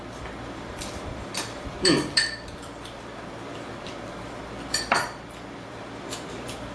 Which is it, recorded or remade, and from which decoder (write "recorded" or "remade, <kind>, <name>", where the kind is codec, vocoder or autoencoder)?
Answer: remade, vocoder, BigVGAN v2